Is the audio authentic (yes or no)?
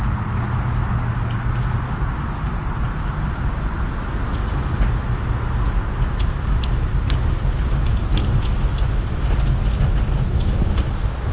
yes